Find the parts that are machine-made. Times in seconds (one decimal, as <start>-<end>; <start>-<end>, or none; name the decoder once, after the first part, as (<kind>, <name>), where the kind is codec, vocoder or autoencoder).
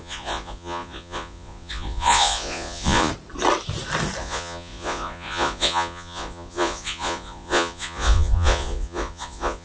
0.0-3.1 (vocoder, Vocos); 4.2-9.6